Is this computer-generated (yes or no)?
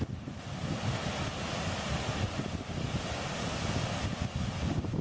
no